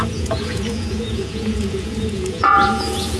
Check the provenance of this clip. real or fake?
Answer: fake